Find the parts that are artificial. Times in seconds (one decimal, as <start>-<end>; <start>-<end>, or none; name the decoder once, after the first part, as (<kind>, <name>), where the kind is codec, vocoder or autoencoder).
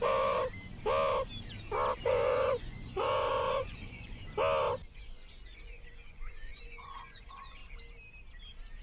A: 0.0-0.4 (vocoder, Vocos); 1.9-4.2; 4.9-7.6